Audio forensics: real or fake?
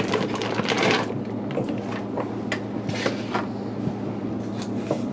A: real